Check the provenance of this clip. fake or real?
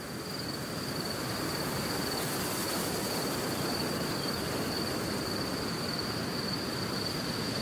real